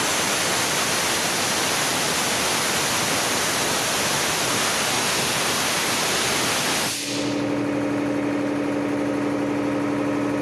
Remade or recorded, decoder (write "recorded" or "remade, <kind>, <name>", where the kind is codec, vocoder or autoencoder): recorded